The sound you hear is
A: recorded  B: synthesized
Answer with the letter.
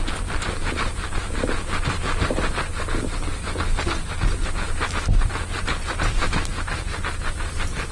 A